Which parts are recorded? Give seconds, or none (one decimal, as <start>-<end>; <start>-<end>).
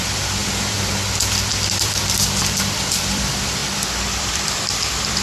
3.6-4.2